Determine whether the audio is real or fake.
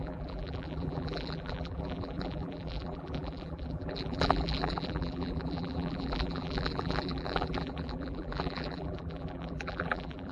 fake